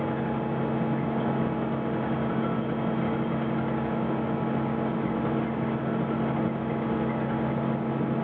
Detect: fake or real real